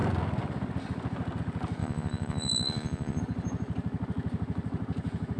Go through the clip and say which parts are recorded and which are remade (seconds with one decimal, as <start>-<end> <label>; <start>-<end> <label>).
0.0-1.8 recorded; 1.8-3.2 remade; 3.2-5.4 recorded